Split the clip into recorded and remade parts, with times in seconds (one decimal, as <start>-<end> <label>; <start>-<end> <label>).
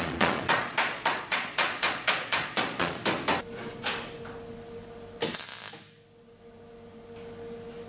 0.0-3.0 remade; 3.0-7.9 recorded